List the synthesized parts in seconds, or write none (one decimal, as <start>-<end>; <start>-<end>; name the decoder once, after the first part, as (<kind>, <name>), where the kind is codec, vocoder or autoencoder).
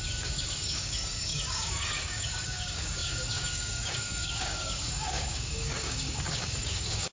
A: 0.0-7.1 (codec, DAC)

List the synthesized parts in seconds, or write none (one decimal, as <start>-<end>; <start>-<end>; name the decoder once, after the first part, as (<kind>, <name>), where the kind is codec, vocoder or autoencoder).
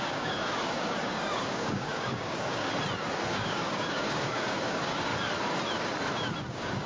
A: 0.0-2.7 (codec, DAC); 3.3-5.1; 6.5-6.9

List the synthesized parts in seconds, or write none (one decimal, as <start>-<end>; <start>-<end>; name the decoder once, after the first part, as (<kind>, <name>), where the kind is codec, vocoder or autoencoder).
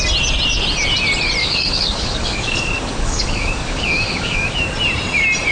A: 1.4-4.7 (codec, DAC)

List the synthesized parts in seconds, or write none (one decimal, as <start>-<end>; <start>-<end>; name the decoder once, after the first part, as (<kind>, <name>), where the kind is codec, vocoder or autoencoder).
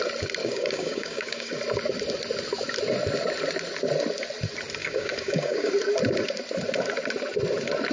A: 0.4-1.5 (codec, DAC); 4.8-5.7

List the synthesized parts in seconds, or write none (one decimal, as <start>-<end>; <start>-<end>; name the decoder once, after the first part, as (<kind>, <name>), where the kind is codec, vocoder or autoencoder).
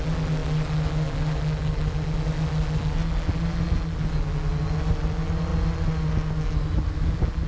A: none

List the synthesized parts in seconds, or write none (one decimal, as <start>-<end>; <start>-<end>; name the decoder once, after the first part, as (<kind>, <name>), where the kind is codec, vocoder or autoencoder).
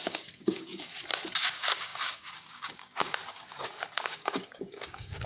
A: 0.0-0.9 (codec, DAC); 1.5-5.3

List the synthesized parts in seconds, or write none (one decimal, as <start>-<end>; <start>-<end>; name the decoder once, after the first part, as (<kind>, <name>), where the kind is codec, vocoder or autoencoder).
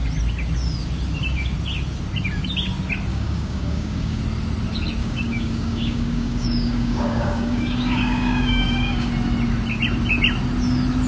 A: 3.1-4.2 (codec, DAC); 5.0-9.1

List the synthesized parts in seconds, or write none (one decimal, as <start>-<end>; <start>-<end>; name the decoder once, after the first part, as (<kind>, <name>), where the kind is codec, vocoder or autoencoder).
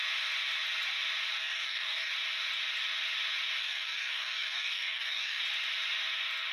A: 1.4-2.1 (codec, DAC); 3.6-5.4